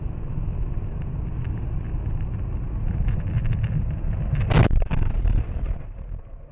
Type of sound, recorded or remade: recorded